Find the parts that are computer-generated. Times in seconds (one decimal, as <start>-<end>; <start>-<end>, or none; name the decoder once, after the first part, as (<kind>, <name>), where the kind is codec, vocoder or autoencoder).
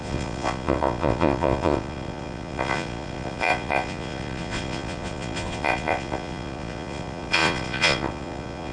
0.0-8.7 (vocoder, Vocos)